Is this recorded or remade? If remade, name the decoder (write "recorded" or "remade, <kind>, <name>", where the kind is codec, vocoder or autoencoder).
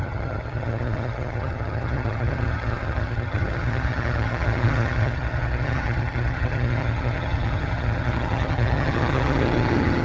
remade, vocoder, HiFi-GAN